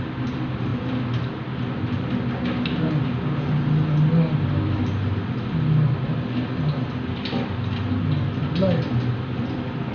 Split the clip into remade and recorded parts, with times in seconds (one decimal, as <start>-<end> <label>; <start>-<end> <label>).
0.0-9.9 recorded

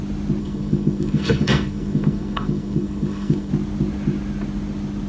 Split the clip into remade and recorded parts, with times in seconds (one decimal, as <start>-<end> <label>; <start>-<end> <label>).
0.0-0.4 recorded; 0.4-3.5 remade; 3.5-5.1 recorded

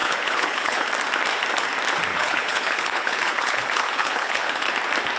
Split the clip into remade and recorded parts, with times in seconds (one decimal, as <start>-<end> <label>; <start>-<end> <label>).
0.0-0.9 remade; 0.9-2.1 recorded; 2.1-4.7 remade; 4.7-5.2 recorded

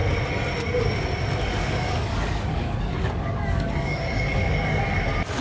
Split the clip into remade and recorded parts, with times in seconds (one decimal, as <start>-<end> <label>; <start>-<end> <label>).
0.0-1.6 recorded; 1.6-4.8 remade; 4.8-5.4 recorded

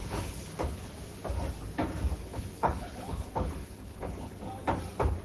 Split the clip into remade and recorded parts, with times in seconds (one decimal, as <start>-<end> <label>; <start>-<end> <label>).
0.0-0.9 remade; 0.9-2.2 recorded; 2.2-4.4 remade; 4.4-5.2 recorded